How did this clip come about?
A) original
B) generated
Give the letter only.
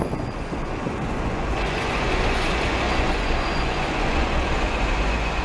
B